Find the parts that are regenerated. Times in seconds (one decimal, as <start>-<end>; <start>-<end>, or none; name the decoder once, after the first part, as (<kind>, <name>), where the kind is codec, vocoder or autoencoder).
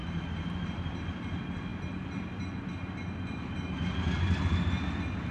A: 0.0-1.0 (vocoder, BigVGAN v2)